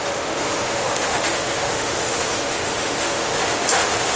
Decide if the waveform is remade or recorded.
remade